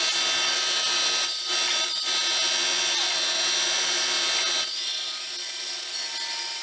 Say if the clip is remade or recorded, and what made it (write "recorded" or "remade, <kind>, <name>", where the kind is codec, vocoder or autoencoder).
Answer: recorded